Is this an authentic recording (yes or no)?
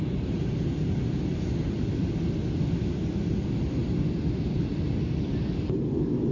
yes